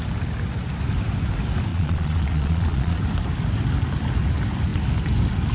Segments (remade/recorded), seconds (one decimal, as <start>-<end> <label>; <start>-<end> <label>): 0.0-1.7 recorded; 1.7-3.0 remade; 3.0-5.5 recorded